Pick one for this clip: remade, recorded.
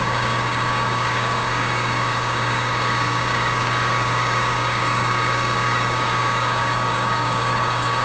remade